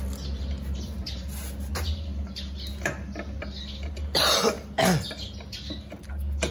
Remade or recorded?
recorded